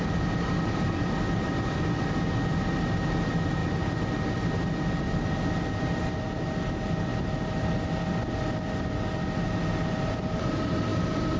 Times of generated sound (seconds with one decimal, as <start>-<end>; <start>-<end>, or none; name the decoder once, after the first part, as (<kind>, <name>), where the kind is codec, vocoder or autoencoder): none